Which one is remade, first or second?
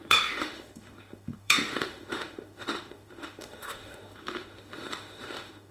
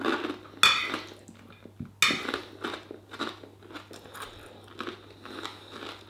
first